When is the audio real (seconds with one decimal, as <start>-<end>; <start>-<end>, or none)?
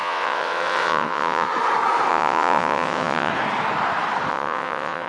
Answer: 1.5-2.1; 3.3-4.3